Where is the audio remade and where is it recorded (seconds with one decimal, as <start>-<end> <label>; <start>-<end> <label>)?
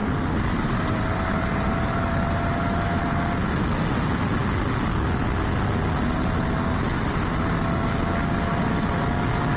0.0-3.2 remade; 3.2-9.6 recorded